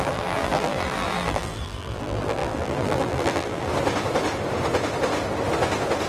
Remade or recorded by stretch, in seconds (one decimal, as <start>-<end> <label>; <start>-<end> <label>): 0.0-3.7 remade; 3.7-6.1 recorded